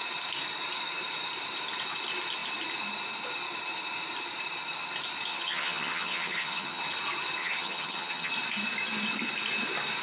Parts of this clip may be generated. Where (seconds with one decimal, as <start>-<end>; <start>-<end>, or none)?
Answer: 5.3-6.8; 7.4-8.3